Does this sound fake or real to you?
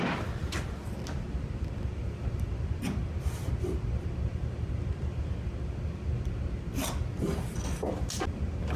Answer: fake